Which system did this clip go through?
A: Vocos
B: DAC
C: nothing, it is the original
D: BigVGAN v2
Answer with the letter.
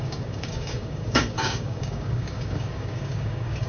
B